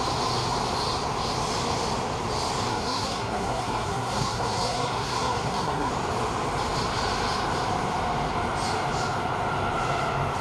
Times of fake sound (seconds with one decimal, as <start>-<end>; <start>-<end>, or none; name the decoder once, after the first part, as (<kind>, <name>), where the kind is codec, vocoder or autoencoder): 2.7-5.9 (codec, SNAC)